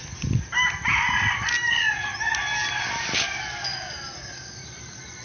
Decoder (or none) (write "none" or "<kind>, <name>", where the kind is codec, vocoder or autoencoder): none